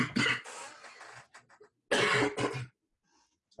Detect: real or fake real